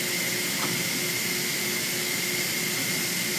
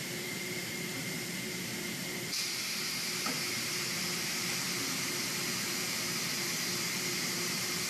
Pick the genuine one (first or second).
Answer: first